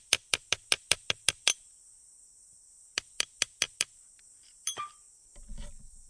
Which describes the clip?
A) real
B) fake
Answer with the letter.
B